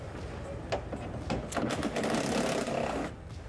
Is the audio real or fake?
real